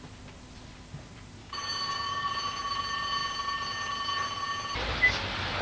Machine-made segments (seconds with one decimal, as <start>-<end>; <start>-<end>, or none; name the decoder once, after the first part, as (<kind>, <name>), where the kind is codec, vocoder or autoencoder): 1.4-2.3 (codec, DAC)